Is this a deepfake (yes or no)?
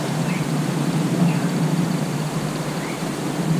yes